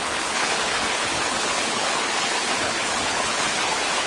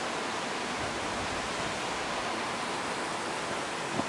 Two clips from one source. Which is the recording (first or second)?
second